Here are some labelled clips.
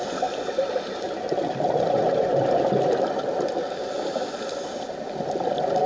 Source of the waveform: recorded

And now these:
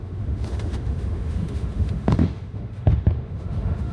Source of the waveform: remade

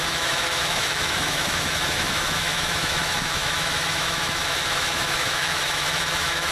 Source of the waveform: remade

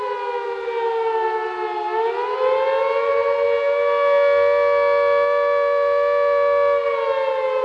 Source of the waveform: recorded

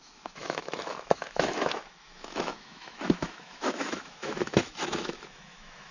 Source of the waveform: remade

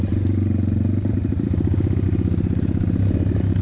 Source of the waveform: recorded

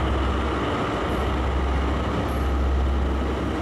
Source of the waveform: recorded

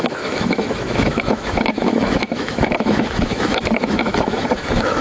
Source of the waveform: remade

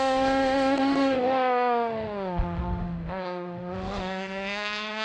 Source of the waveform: remade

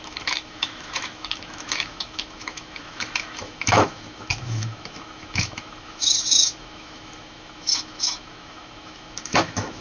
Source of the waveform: remade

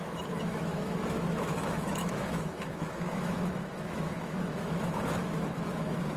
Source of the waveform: remade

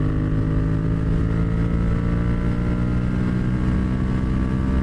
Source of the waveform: recorded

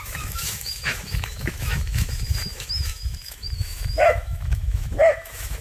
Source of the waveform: remade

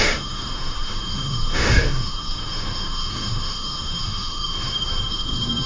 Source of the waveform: remade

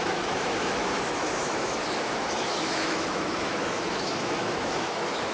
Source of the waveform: remade